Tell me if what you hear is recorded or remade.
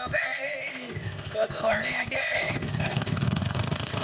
remade